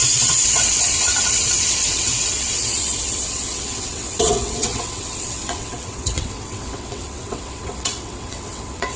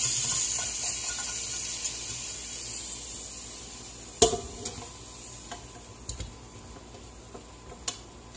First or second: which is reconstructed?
first